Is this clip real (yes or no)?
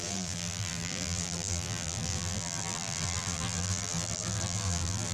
no